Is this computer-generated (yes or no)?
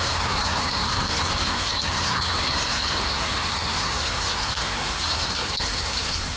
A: yes